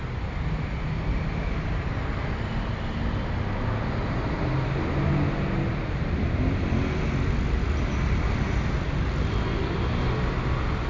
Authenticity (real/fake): real